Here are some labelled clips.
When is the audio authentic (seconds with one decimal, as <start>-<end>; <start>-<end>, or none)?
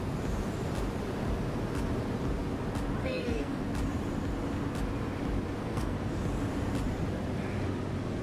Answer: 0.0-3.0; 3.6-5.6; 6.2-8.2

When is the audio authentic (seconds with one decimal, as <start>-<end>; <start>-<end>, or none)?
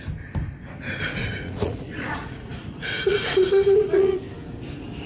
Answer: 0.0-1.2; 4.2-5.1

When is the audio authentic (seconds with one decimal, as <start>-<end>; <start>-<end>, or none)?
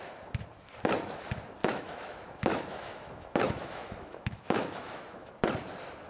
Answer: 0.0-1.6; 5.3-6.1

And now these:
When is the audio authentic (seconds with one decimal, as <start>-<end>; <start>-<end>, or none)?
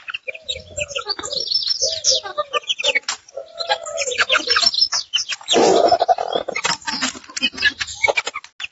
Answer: 0.0-8.7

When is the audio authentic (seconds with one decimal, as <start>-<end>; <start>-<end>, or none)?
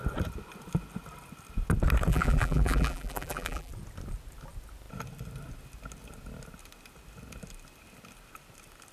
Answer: 0.0-2.1; 3.7-8.9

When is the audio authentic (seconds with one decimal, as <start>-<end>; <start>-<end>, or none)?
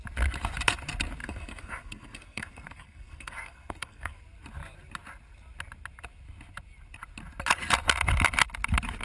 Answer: 0.0-1.2; 4.2-9.0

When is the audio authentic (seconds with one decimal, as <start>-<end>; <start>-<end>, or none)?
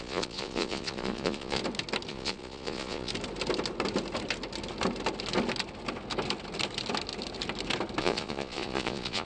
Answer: 1.6-2.1; 3.1-8.0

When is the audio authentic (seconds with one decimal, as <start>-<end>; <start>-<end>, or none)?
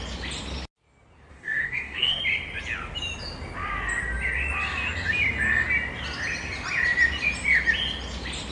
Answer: 0.0-1.3; 2.2-8.5